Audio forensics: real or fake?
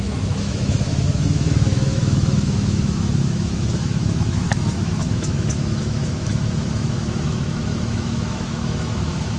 fake